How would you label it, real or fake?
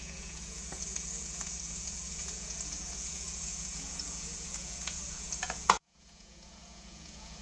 fake